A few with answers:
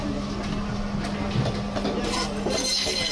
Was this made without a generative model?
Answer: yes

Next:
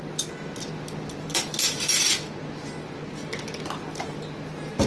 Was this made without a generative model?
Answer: yes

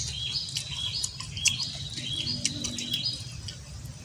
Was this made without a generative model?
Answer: yes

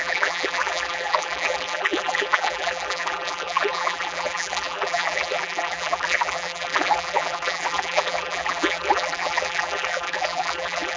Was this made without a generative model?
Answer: no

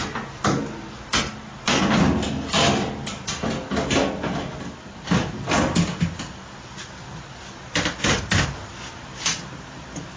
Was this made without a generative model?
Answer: yes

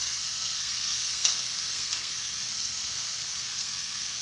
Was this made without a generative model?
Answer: no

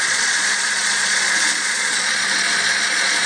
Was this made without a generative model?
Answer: no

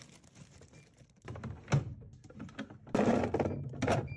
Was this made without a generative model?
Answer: yes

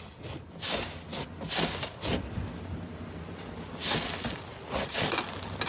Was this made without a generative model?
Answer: yes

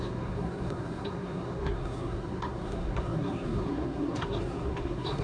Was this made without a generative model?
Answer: no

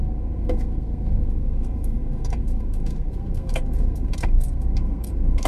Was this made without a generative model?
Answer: no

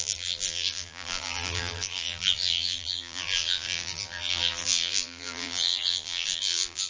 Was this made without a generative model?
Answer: no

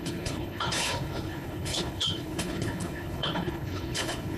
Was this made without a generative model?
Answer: no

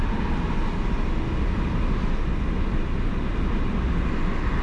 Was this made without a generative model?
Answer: yes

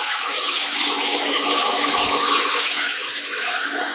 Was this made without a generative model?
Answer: no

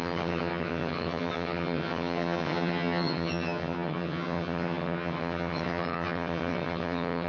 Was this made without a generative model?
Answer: no